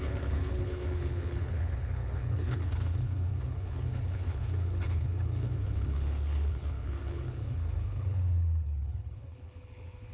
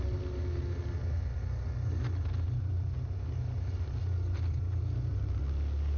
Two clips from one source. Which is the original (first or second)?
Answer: second